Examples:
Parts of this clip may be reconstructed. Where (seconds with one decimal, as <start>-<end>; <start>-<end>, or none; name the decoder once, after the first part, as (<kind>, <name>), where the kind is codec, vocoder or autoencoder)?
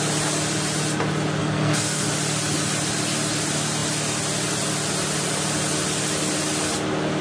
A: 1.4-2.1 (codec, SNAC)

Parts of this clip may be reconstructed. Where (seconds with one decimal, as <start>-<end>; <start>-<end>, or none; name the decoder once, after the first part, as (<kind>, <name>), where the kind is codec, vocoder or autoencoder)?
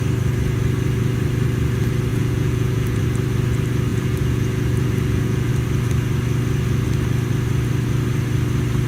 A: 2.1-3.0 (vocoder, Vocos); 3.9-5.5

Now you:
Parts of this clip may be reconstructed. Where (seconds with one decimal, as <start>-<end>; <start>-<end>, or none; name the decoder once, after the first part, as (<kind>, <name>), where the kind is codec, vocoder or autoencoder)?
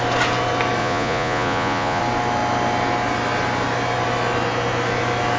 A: 0.8-2.0 (vocoder, Vocos)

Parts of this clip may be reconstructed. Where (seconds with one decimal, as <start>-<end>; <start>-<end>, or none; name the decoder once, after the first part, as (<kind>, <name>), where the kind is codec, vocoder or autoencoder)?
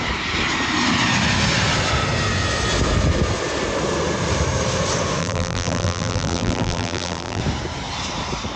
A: 5.2-7.4 (vocoder, BigVGAN v2)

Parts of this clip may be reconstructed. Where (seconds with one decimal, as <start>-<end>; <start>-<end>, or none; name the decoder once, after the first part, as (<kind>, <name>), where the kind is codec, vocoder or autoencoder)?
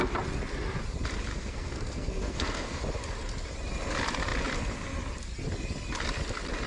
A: 1.3-2.8 (codec, SNAC)